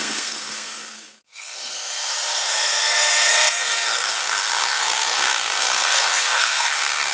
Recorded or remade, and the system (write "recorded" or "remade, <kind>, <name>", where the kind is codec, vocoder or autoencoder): remade, codec, SNAC